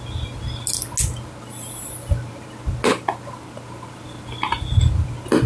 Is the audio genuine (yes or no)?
yes